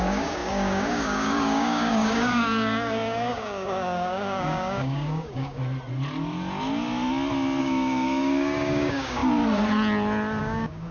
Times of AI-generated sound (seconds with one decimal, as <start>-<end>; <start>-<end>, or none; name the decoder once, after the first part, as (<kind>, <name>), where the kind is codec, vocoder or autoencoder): 0.0-5.6 (codec, DAC); 7.6-9.2; 10.4-10.9